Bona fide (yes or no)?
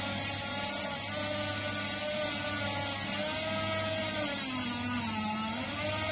yes